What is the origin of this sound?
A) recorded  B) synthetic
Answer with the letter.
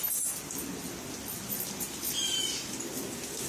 A